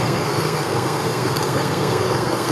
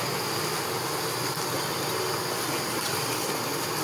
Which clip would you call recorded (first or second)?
second